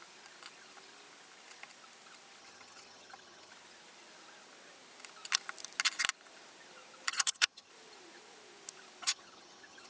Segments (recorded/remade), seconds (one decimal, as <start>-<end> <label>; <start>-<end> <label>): 0.0-2.4 recorded; 2.4-3.5 remade; 3.5-7.1 recorded; 7.1-7.7 remade; 7.7-9.0 recorded; 9.0-9.9 remade